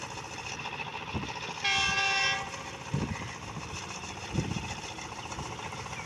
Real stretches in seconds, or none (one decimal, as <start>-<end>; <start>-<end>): 0.0-6.1